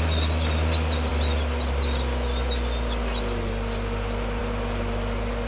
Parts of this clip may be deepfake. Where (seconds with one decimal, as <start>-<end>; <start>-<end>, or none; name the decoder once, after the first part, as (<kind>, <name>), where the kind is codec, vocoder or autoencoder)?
none